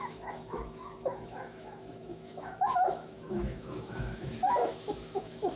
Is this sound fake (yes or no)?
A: yes